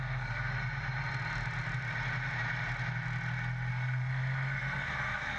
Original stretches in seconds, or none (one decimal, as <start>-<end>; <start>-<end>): 0.5-3.7